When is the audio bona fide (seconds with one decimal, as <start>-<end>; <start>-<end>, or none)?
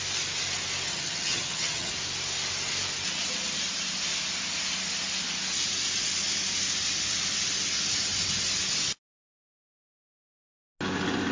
0.0-0.9; 1.9-11.3